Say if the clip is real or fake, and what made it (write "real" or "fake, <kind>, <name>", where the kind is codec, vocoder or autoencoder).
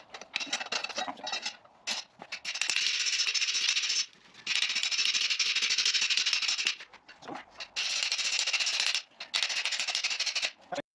real